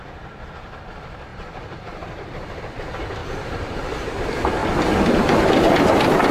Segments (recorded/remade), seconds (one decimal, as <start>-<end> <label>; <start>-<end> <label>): 0.0-1.3 recorded; 1.3-2.6 remade; 2.6-3.2 recorded; 3.2-4.1 remade; 4.1-6.3 recorded